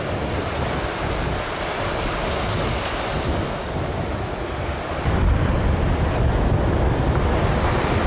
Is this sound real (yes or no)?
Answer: yes